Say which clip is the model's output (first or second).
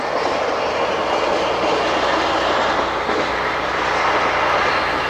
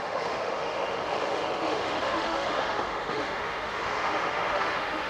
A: second